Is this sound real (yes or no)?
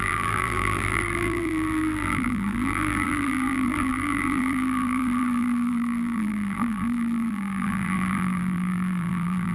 no